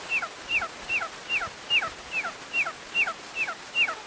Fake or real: real